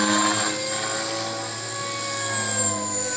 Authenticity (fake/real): real